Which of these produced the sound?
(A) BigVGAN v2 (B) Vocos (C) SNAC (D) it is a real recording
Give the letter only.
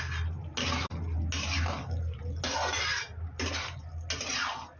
D